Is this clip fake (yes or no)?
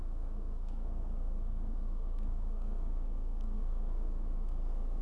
yes